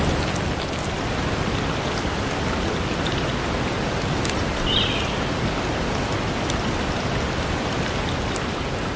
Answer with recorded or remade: recorded